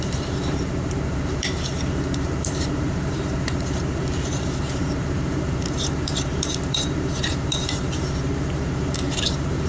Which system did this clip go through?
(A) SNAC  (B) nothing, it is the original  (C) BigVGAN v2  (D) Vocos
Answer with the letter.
C